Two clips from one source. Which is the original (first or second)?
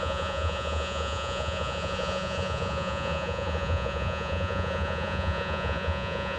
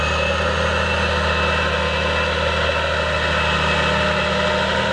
second